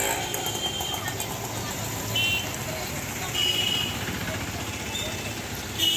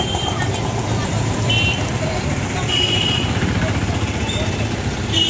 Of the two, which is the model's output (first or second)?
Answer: second